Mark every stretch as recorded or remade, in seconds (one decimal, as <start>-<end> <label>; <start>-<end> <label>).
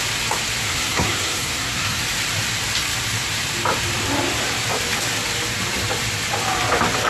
0.0-0.7 recorded; 0.7-2.0 remade; 2.0-7.1 recorded